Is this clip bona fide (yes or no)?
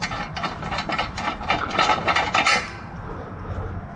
yes